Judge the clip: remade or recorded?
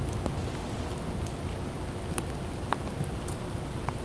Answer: recorded